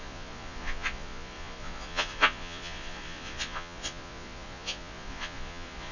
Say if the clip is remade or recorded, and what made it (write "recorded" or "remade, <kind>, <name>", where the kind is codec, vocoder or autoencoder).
remade, vocoder, Vocos